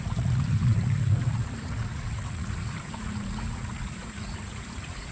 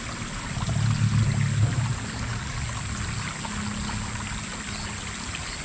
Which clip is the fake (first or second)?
first